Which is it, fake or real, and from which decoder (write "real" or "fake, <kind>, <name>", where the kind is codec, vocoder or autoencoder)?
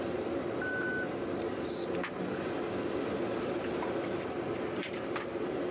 real